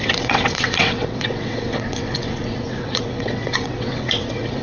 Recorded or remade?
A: remade